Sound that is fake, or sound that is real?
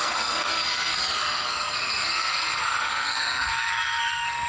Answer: fake